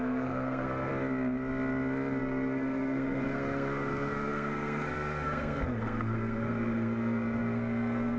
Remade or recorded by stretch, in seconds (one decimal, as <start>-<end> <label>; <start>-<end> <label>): 0.0-0.9 remade; 0.9-2.2 recorded; 2.2-8.2 remade